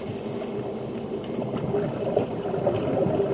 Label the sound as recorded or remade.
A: recorded